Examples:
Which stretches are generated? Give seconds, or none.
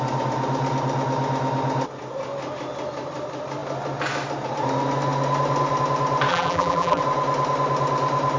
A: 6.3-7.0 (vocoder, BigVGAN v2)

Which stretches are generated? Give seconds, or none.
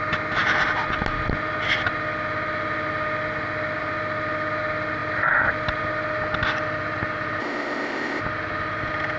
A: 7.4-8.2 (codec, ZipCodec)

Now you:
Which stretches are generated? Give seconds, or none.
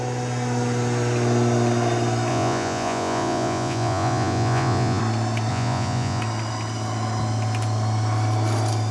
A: 2.3-5.0 (vocoder, Vocos); 5.5-6.2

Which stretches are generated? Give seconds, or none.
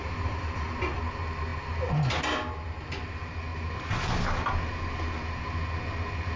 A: 0.0-1.0 (vocoder, BigVGAN v2)